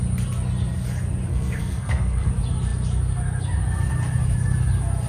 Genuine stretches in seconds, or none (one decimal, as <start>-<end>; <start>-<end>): 0.0-1.3; 2.3-5.1